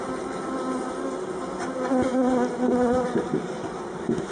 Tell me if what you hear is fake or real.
real